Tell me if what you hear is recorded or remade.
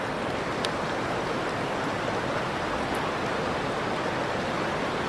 recorded